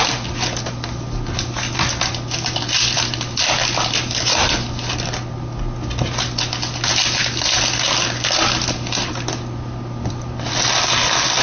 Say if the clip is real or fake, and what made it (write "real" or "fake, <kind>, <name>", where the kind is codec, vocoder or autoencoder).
real